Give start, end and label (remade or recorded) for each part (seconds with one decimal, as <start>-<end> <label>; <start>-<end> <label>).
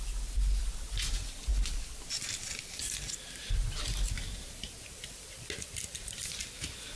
0.0-7.0 recorded